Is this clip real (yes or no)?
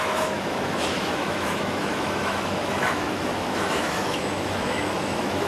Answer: no